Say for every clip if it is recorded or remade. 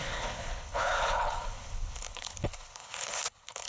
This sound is remade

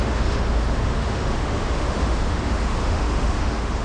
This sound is remade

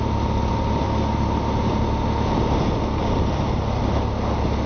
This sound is recorded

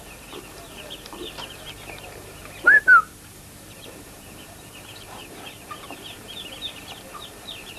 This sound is remade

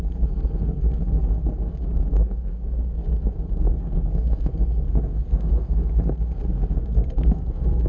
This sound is remade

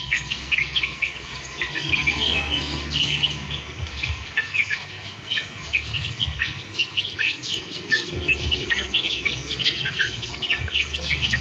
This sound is remade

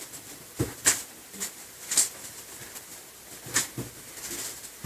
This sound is recorded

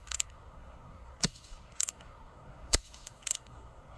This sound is remade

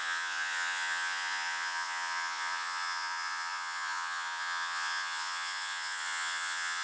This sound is remade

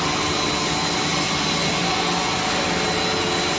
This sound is recorded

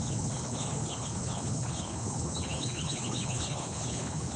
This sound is remade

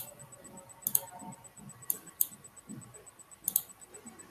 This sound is recorded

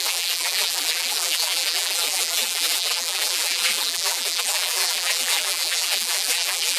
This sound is remade